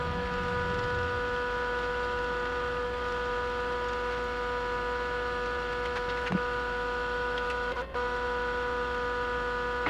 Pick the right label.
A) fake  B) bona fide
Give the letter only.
B